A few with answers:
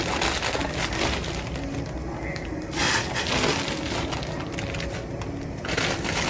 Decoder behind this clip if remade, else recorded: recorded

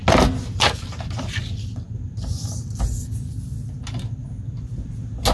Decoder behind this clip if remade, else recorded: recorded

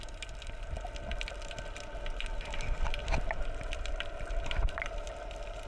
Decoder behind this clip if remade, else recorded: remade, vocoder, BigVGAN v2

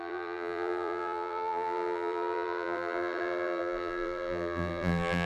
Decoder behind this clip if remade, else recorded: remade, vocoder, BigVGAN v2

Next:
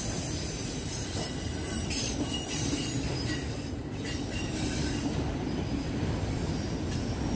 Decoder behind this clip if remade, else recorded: remade, vocoder, BigVGAN v2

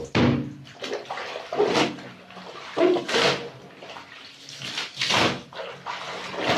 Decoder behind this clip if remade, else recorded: recorded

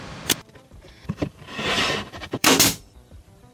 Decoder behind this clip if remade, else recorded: remade, vocoder, BigVGAN v2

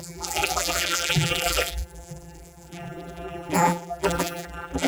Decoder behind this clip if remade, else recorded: remade, vocoder, BigVGAN v2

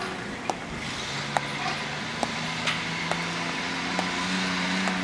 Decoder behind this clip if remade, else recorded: remade, vocoder, BigVGAN v2